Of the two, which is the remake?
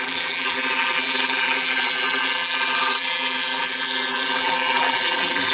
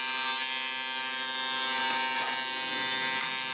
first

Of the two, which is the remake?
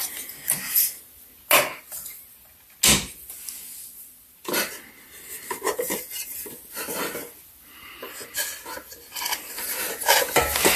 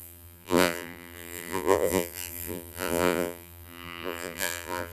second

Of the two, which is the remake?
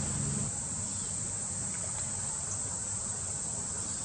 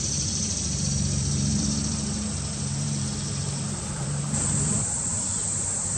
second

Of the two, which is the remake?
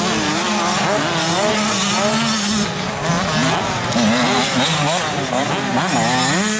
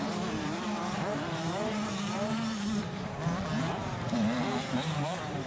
second